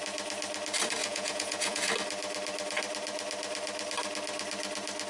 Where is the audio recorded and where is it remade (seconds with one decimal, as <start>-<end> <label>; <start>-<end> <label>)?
0.0-1.0 recorded; 1.0-1.9 remade; 1.9-5.1 recorded